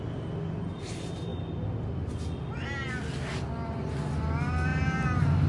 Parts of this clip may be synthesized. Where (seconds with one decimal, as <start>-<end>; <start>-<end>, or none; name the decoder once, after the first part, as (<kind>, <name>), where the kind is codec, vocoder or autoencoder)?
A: none